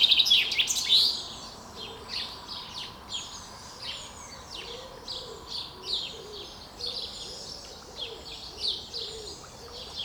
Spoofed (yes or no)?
no